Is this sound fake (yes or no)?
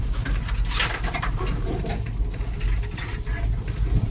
no